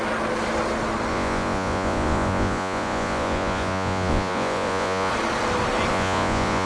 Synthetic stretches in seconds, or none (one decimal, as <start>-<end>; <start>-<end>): 1.1-5.1; 5.9-6.7